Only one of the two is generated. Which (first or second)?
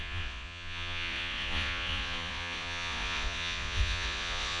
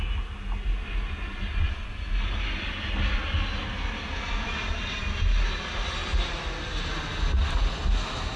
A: first